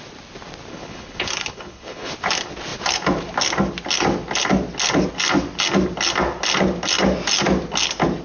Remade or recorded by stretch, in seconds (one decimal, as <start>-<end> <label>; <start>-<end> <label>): 0.0-0.7 recorded; 0.7-2.1 remade; 2.1-8.2 recorded